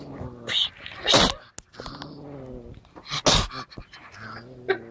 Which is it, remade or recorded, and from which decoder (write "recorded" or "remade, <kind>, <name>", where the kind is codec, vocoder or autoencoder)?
recorded